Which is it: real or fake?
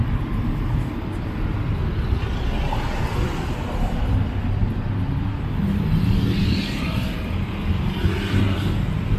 real